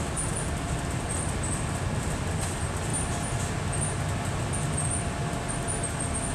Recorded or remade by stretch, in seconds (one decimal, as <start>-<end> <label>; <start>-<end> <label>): 0.0-6.3 recorded